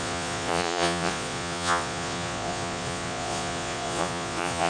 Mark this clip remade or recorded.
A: remade